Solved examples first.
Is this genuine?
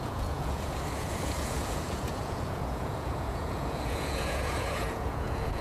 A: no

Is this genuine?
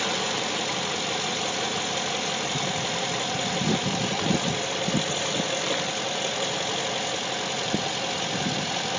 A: yes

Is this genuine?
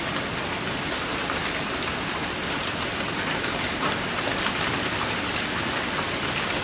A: yes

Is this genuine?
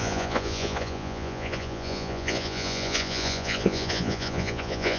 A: no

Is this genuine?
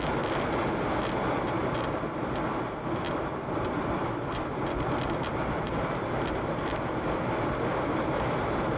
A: yes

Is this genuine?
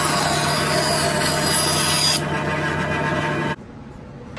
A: yes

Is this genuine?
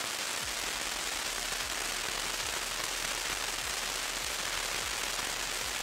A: yes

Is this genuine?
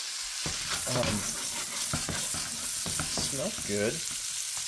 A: yes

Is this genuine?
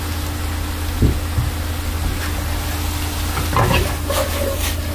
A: yes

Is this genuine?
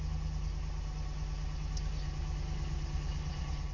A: yes